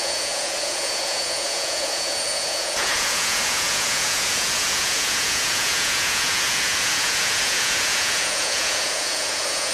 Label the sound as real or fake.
fake